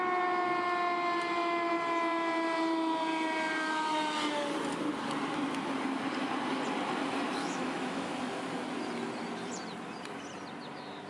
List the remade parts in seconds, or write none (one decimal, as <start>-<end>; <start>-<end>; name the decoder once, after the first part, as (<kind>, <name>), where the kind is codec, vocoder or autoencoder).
7.4-8.3 (autoencoder, DAC-VAE)